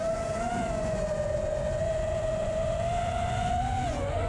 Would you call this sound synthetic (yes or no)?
yes